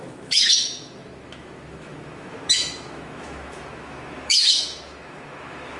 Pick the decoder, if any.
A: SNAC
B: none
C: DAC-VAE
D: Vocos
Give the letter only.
C